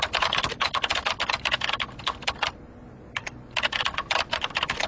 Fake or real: real